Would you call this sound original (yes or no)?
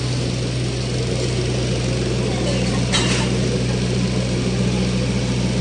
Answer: yes